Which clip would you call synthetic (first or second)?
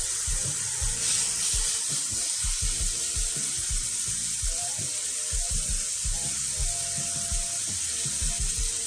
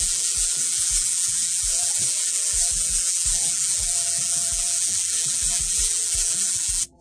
second